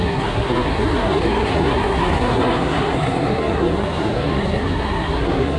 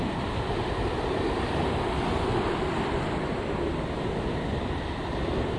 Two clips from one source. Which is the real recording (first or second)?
second